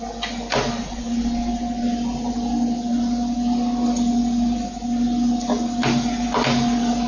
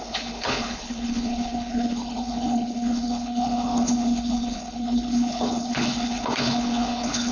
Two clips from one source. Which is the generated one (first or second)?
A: second